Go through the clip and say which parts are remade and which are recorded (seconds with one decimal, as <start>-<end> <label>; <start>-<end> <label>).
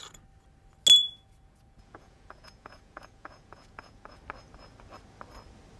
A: 0.0-1.0 recorded; 1.0-4.2 remade; 4.2-5.8 recorded